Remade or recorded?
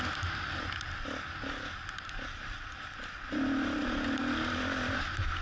recorded